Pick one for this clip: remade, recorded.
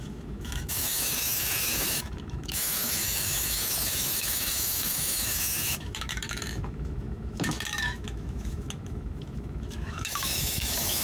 remade